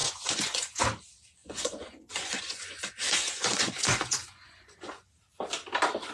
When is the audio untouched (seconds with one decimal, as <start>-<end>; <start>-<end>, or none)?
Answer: 0.8-1.4; 5.1-6.1